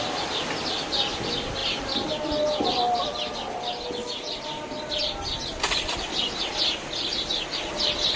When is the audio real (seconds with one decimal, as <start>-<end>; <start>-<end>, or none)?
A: 0.0-8.2